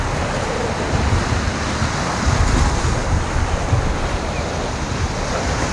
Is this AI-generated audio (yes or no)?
no